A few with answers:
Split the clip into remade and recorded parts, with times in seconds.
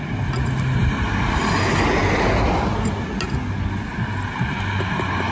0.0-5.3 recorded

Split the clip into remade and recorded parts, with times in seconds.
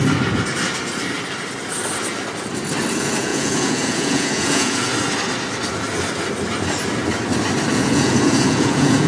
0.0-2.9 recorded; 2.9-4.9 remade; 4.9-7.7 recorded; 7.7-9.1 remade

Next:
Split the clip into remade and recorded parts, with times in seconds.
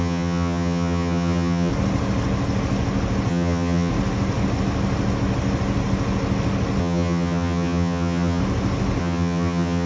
0.0-1.7 remade; 1.7-3.3 recorded; 3.3-3.9 remade; 3.9-6.8 recorded; 6.8-8.4 remade; 8.4-9.0 recorded; 9.0-9.9 remade